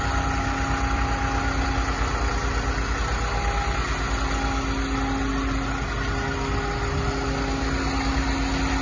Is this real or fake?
real